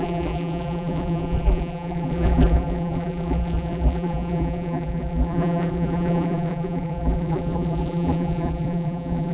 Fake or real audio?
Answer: fake